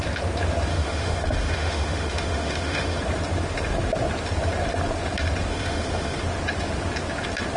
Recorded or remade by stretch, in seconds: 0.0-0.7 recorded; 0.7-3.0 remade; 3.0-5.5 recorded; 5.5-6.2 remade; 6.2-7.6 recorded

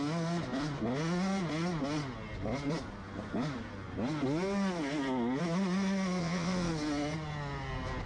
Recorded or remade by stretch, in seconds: 0.0-6.2 recorded; 6.2-6.7 remade; 6.7-8.1 recorded

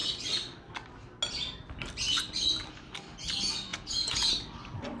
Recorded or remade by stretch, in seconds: 0.0-3.7 recorded; 3.7-4.3 remade; 4.3-5.0 recorded

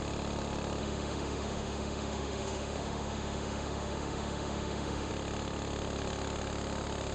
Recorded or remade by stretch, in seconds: 0.0-0.8 recorded; 0.8-5.1 remade; 5.1-7.1 recorded

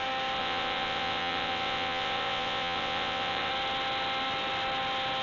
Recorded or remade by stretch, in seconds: 0.0-0.4 recorded; 0.4-3.5 remade; 3.5-5.2 recorded

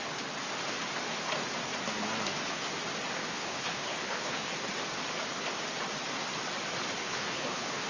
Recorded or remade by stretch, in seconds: 0.0-3.2 recorded; 3.2-4.5 remade; 4.5-7.0 recorded; 7.0-7.9 remade

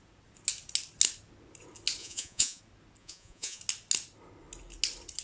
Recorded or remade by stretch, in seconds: 0.0-2.0 recorded; 2.0-2.6 remade; 2.6-3.0 recorded; 3.0-3.6 remade; 3.6-5.2 recorded

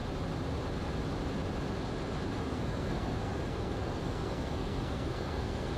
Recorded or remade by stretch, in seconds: 0.0-2.4 recorded; 2.4-5.8 remade